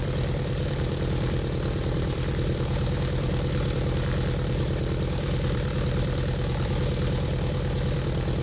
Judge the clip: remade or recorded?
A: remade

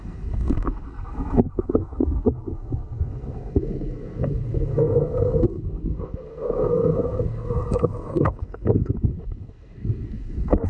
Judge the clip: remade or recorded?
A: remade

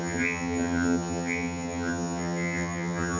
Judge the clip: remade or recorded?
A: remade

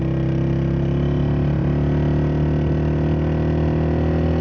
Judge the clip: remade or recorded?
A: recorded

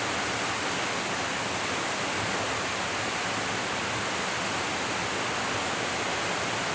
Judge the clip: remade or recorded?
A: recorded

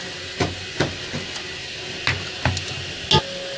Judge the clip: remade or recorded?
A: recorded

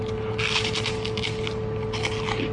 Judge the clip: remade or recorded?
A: recorded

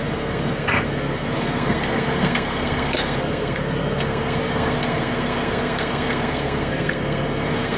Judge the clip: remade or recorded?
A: remade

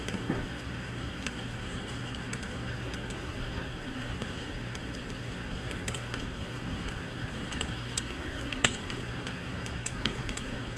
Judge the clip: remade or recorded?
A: remade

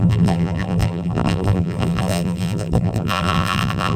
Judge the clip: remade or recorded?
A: remade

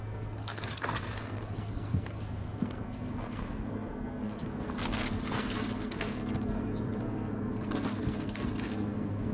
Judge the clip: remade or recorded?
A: remade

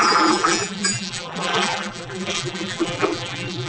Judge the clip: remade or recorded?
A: remade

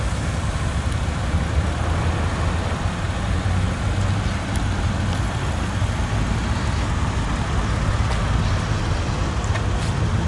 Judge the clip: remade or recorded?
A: recorded